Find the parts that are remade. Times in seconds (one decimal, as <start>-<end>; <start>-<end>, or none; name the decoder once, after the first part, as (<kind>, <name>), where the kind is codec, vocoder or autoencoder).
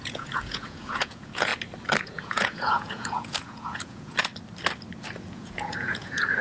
0.0-1.5 (vocoder, Vocos); 2.0-4.3; 5.3-6.4